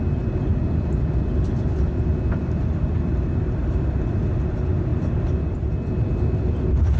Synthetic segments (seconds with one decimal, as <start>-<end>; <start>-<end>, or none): none